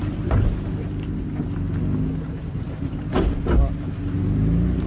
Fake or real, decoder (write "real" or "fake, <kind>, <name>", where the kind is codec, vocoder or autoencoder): real